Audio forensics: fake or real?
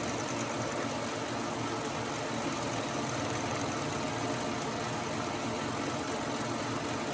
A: real